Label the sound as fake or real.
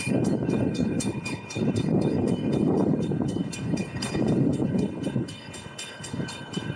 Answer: fake